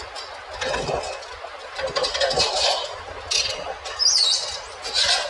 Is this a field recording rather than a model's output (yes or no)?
yes